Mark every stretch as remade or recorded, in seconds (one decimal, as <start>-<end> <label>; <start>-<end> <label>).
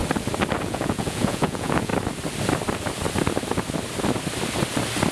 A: 0.0-0.6 recorded; 0.6-1.9 remade; 1.9-5.1 recorded